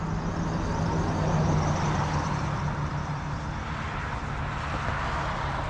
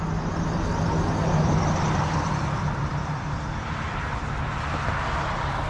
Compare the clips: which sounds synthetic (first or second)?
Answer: second